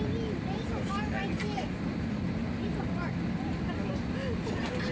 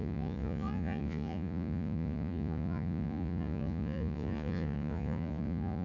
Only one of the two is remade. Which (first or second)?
second